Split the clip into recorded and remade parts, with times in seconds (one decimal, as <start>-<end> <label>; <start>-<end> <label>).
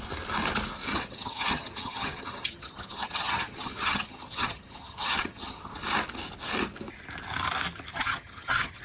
0.0-0.9 recorded; 0.9-5.7 remade; 5.7-7.9 recorded; 7.9-8.8 remade